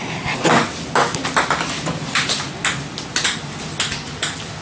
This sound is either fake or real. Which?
real